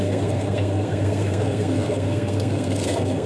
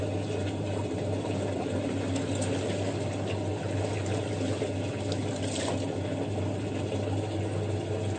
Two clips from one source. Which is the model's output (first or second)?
first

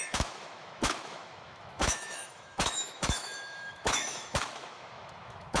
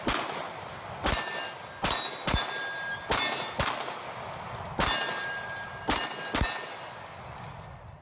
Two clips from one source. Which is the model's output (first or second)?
first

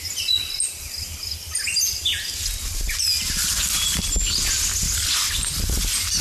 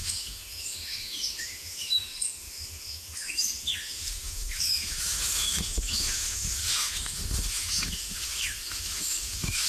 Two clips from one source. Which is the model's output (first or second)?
second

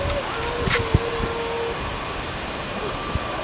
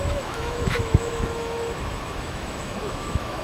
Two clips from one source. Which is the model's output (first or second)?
second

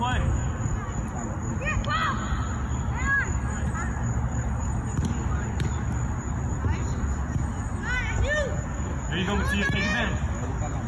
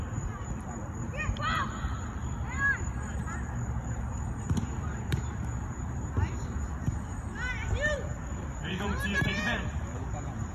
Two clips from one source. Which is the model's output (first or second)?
second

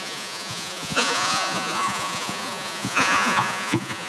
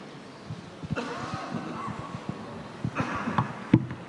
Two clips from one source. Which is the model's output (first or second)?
first